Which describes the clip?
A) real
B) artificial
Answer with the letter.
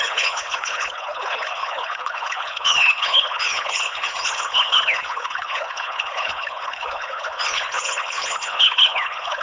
B